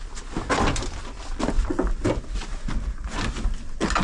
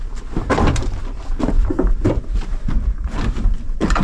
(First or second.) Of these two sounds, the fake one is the second